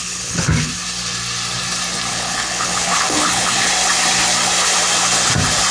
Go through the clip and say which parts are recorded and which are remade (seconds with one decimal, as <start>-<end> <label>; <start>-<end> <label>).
0.0-0.7 remade; 0.7-2.1 recorded; 2.1-3.7 remade; 3.7-5.7 recorded

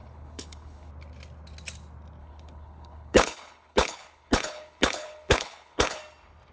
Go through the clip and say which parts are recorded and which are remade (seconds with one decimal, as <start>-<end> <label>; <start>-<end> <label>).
0.0-0.9 remade; 0.9-2.2 recorded; 2.2-6.0 remade; 6.0-6.5 recorded

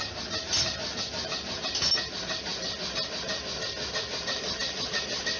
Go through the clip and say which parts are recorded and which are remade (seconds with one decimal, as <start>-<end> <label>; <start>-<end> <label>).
0.0-5.4 recorded

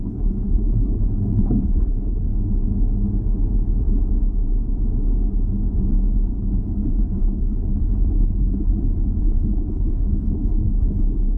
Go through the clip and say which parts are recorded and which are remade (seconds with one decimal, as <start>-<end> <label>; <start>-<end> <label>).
0.0-2.3 remade; 2.3-6.6 recorded; 6.6-8.7 remade; 8.7-9.2 recorded; 9.2-11.4 remade

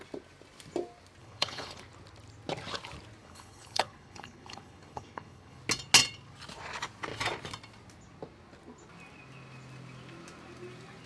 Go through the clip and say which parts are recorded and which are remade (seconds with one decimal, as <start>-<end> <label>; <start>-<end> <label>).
0.0-1.2 recorded; 1.2-1.8 remade; 1.8-3.2 recorded; 3.2-5.6 remade; 5.6-11.1 recorded

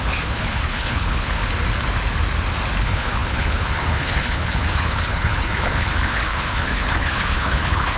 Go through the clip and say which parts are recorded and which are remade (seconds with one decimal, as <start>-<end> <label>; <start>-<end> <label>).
0.0-1.4 remade; 1.4-2.8 recorded; 2.8-8.0 remade